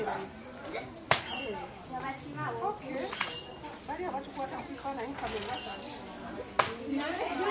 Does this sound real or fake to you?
real